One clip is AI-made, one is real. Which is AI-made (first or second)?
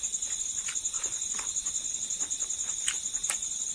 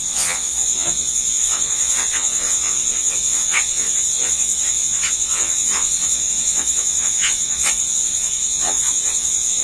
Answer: second